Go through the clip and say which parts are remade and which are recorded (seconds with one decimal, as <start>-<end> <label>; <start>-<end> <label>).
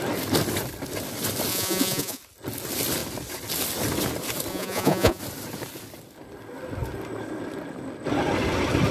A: 0.0-1.5 recorded; 1.5-2.2 remade; 2.2-4.5 recorded; 4.5-5.2 remade; 5.2-8.9 recorded